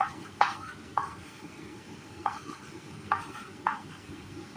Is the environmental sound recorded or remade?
remade